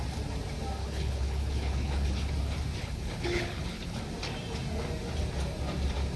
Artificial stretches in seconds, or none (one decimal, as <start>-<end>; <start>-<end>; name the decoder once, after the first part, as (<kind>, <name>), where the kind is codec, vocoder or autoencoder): 0.8-2.3 (codec, HILCodec); 2.8-4.0